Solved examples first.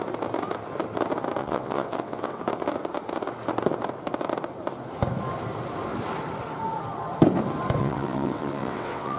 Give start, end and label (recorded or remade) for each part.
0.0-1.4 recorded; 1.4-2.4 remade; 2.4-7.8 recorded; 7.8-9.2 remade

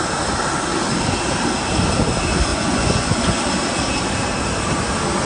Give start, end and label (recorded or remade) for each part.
0.0-2.5 recorded; 2.5-3.4 remade; 3.4-5.3 recorded

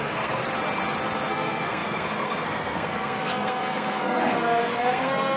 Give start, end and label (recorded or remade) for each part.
0.0-0.4 remade; 0.4-1.3 recorded; 1.3-5.4 remade

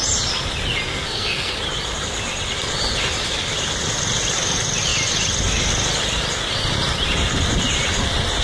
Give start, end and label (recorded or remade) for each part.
0.0-0.9 recorded; 0.9-1.5 remade; 1.5-8.4 recorded

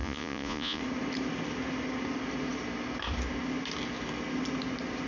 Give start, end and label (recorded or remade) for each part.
0.0-0.8 remade; 0.8-5.1 recorded